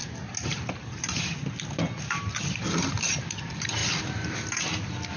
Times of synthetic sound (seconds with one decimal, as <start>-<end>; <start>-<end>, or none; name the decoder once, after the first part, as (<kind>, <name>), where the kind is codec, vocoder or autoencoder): none